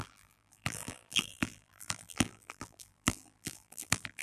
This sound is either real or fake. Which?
fake